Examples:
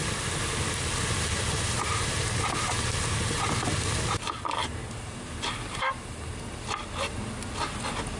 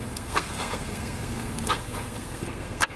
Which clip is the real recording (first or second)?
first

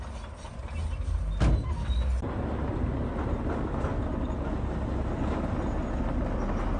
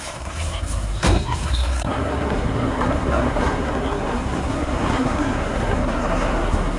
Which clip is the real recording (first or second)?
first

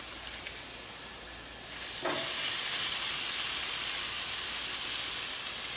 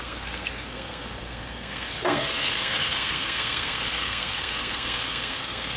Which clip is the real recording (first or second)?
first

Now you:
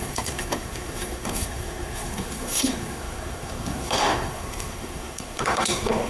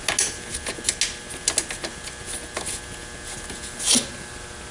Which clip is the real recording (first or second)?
second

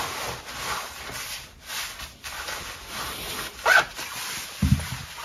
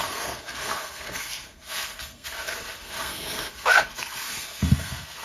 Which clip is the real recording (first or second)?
first